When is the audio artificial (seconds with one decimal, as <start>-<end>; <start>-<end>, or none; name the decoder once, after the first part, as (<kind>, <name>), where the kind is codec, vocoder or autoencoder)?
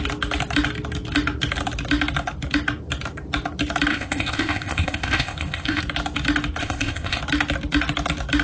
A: 3.9-5.8 (codec, ZipCodec); 6.6-7.2